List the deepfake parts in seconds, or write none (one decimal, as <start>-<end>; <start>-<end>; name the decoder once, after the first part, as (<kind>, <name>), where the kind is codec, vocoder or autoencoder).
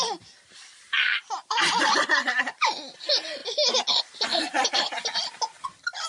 0.0-3.4 (vocoder, BigVGAN v2); 3.9-6.1